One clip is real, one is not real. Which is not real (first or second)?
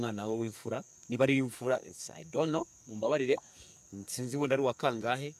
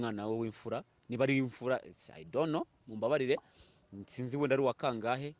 first